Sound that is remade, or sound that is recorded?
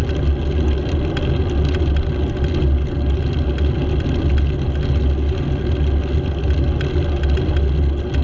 recorded